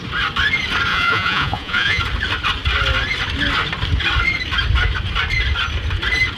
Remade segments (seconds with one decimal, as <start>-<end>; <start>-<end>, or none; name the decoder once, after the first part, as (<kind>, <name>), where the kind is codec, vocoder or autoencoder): 0.9-2.0 (vocoder, Vocos)